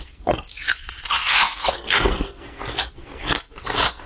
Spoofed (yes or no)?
yes